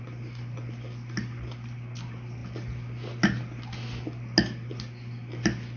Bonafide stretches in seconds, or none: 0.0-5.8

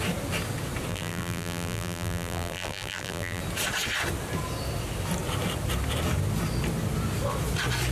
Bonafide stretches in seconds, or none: 0.0-0.9; 3.4-7.9

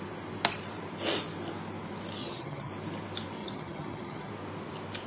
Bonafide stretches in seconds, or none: 0.0-2.2; 2.7-3.4; 4.3-5.1

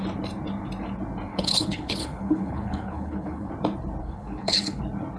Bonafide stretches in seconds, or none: 0.0-1.3; 3.5-4.0; 4.8-5.2

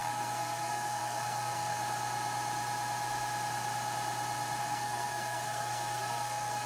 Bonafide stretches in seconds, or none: 1.8-4.6